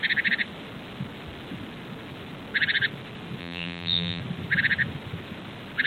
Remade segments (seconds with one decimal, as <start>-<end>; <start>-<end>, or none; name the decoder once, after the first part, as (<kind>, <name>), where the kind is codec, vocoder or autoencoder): 3.4-4.2 (vocoder, BigVGAN v2)